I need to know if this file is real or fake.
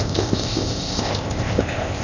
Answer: fake